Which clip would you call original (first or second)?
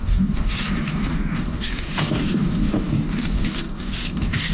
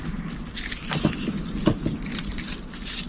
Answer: second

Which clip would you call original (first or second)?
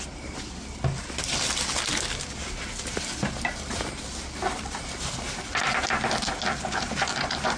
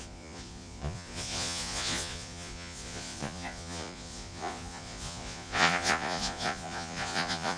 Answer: first